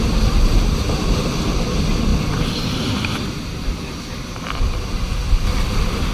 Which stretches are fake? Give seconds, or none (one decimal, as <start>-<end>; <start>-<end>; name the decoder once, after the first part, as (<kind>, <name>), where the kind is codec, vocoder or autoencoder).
none

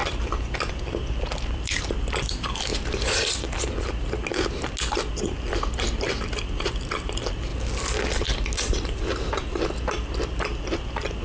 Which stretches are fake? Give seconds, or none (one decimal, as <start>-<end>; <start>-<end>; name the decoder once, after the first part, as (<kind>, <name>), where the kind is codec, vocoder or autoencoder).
0.7-2.7 (vocoder, BigVGAN v2); 5.1-7.5; 10.4-11.2

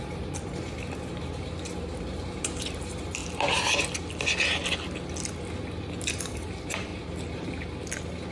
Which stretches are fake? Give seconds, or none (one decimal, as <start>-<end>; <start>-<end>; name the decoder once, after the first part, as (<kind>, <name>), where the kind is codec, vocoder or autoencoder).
0.0-3.2 (vocoder, BigVGAN v2); 6.2-6.9